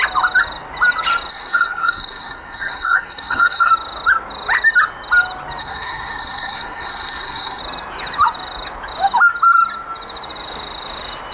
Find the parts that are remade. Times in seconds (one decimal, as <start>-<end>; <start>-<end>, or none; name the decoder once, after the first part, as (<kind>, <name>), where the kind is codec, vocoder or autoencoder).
1.3-3.7 (codec, SNAC); 5.6-7.6